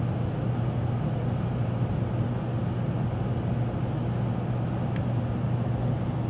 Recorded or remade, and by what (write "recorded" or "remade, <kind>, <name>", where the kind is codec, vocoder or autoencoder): recorded